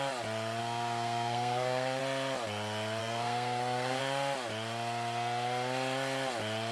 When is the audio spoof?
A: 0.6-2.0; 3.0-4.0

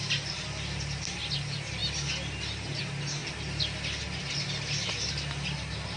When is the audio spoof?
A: none